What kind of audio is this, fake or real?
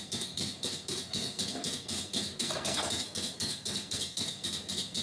fake